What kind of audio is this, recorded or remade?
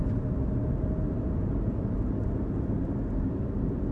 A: recorded